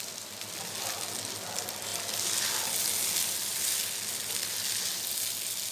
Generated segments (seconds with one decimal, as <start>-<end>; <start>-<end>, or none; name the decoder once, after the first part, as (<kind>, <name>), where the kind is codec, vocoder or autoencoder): none